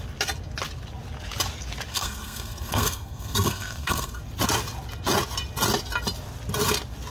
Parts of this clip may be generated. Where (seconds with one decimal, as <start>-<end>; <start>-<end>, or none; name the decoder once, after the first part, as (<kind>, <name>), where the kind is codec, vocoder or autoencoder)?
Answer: 1.9-4.2 (codec, SNAC)